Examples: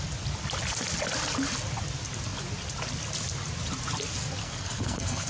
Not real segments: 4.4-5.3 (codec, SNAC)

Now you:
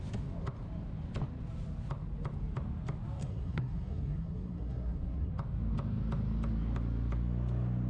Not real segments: 3.2-5.3 (codec, SNAC)

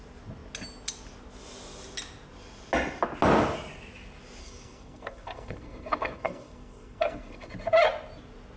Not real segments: 4.4-7.5 (codec, SNAC)

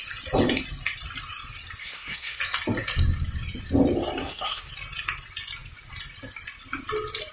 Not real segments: 1.8-2.4 (codec, SNAC); 4.2-4.7